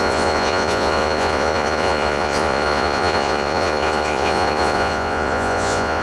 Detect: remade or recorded remade